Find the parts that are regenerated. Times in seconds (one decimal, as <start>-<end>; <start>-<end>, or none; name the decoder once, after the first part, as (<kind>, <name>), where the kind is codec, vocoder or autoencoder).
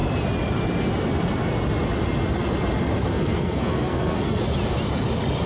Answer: 3.1-4.4 (codec, SNAC)